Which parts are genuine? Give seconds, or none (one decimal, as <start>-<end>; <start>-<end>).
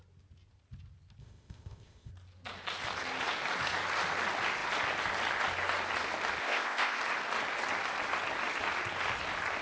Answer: 0.0-1.2; 2.1-6.4; 7.0-9.6